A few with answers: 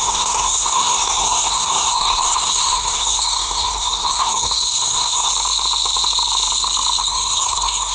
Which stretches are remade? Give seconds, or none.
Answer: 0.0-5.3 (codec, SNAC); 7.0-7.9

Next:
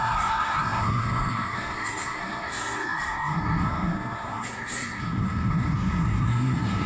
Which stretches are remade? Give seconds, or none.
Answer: 0.0-6.9 (codec, SNAC)